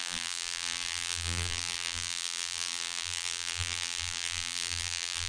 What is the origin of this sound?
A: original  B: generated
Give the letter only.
B